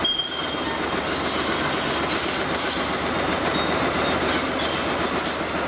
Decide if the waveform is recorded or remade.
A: recorded